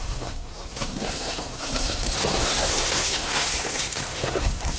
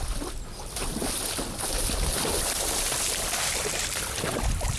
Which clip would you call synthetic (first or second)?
first